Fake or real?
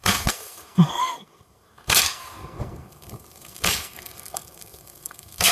fake